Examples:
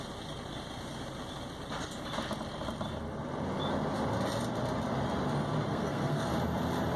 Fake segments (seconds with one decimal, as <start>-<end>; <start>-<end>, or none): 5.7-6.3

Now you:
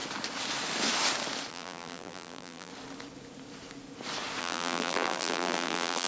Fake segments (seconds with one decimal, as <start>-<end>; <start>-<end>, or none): 1.5-2.7; 4.4-6.1

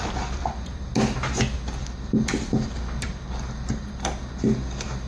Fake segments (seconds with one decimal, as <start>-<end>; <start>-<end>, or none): none

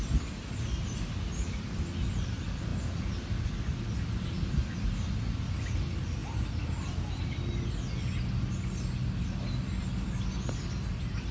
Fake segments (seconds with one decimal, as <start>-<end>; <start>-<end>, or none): none

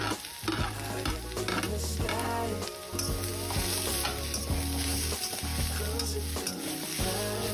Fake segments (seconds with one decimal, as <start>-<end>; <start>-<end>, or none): none

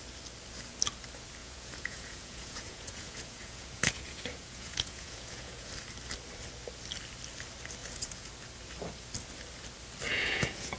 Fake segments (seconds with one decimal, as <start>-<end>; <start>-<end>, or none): 1.4-5.7; 7.8-8.3; 10.1-10.8

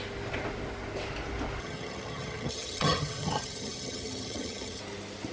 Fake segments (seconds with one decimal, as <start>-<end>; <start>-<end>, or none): 1.6-4.8